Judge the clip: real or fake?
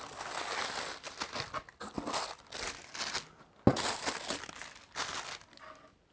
real